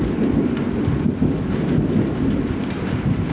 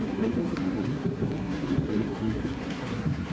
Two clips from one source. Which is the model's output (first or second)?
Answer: second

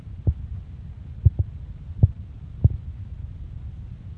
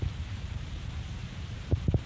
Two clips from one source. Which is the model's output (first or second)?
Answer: second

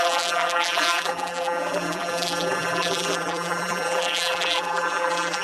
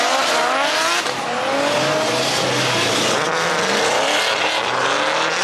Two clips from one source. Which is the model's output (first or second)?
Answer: first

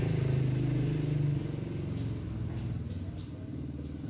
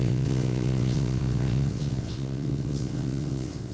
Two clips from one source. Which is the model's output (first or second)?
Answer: second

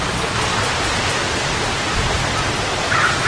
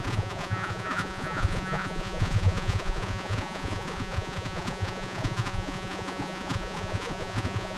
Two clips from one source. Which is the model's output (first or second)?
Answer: second